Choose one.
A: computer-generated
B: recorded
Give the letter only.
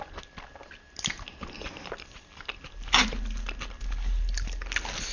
B